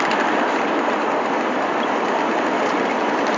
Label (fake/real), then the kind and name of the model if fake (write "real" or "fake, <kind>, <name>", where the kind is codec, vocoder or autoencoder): real